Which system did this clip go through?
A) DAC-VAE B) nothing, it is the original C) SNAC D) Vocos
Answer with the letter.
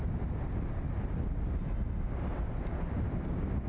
B